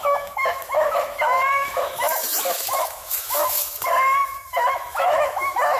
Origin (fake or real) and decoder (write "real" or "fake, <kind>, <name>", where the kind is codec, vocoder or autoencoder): fake, autoencoder, DAC-VAE